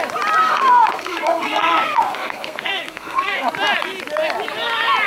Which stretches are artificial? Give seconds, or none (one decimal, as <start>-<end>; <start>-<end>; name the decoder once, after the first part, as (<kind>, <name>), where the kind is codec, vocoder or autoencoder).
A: 0.4-3.5 (codec, SNAC)